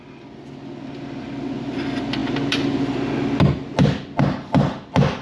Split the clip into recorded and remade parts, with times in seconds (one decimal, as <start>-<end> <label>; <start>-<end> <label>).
0.0-5.2 recorded